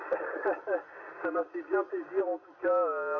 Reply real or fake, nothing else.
real